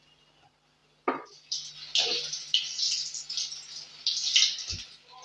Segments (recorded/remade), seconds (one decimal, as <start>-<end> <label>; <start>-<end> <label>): 0.0-5.2 recorded